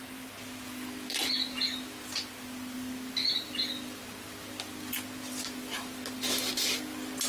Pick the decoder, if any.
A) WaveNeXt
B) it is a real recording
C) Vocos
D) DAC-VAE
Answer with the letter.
B